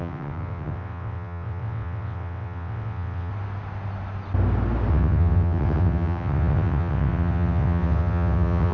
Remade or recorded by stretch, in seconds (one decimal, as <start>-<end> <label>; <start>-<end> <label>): 0.0-3.3 remade; 3.3-4.9 recorded; 4.9-8.7 remade